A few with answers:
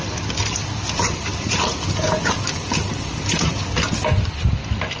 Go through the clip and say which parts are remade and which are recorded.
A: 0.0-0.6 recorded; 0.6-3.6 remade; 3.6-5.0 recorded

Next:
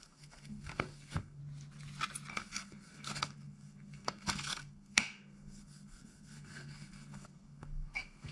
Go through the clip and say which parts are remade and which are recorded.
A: 0.0-1.4 remade; 1.4-2.3 recorded; 2.3-8.3 remade

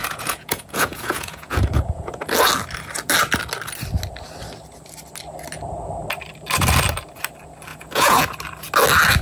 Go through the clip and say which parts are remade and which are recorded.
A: 0.0-2.2 remade; 2.2-7.7 recorded; 7.7-8.2 remade; 8.2-9.2 recorded

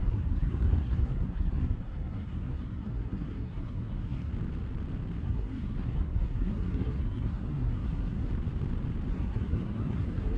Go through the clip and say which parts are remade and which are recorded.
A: 0.0-4.3 remade; 4.3-5.2 recorded; 5.2-8.3 remade; 8.3-9.1 recorded; 9.1-10.4 remade